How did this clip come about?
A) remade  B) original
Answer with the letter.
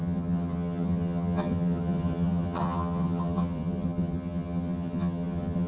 A